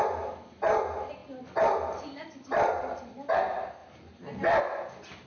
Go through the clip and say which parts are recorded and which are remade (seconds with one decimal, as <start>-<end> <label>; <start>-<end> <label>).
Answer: 0.0-1.2 recorded; 1.2-3.3 remade; 3.3-5.3 recorded